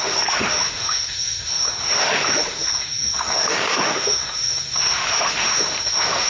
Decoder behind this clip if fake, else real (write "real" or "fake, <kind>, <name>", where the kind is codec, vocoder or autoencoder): fake, autoencoder, DAC-VAE